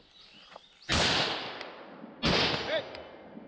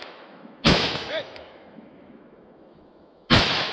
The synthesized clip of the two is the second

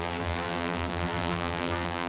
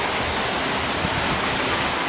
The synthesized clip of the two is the first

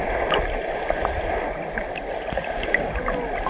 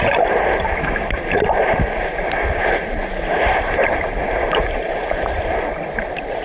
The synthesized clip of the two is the second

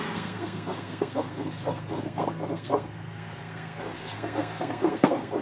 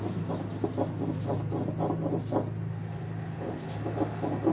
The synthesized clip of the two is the first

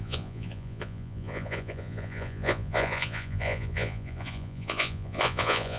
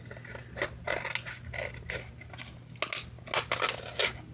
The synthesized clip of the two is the first